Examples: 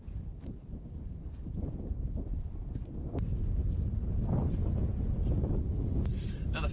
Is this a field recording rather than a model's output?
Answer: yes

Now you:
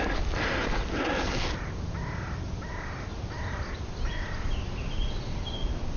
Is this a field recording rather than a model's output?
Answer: yes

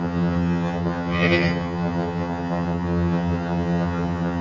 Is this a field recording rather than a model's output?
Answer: no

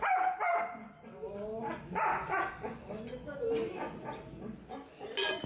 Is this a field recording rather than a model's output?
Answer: yes